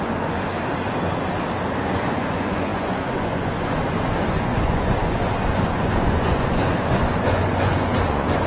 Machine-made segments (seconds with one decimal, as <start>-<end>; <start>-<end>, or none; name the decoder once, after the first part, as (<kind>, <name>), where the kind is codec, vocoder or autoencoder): 0.0-0.5 (vocoder, Vocos); 1.8-8.5